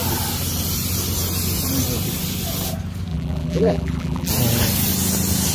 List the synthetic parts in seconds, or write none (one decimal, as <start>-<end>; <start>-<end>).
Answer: 3.1-4.3